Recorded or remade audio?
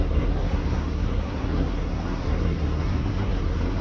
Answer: remade